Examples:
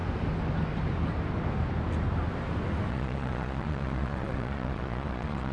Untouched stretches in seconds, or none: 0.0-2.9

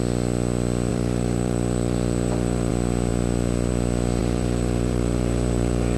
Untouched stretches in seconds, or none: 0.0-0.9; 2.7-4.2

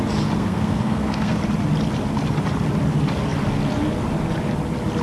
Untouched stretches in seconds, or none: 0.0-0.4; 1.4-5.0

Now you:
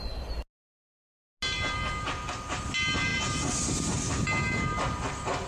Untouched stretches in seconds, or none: 0.0-3.1; 4.1-5.5

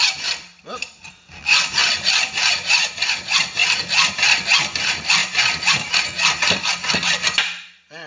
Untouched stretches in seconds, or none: 0.0-8.1

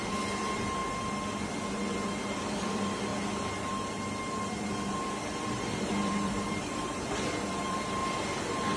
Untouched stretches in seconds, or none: 0.8-1.4; 3.1-4.5; 8.0-8.8

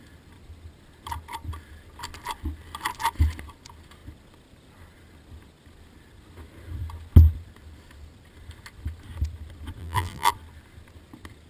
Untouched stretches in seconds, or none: 0.0-9.8; 10.3-11.5